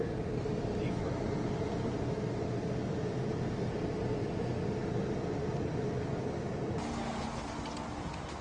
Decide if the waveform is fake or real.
real